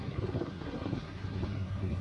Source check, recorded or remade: remade